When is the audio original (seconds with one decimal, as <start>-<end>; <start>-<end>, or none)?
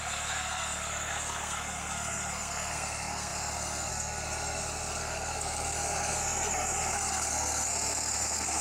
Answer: none